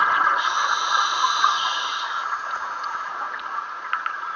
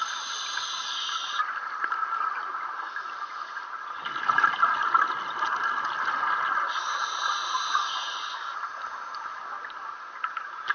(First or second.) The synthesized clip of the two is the first